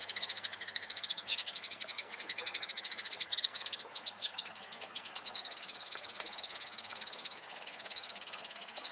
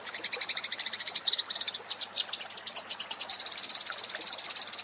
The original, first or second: second